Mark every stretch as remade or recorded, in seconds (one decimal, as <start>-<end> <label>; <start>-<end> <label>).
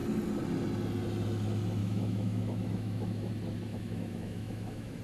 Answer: 0.0-1.8 recorded; 1.8-3.3 remade; 3.3-3.7 recorded; 3.7-5.0 remade